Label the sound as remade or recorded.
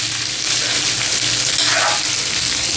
recorded